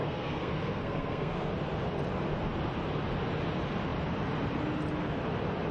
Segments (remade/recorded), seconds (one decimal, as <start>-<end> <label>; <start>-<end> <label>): 0.0-1.5 remade; 1.5-5.7 recorded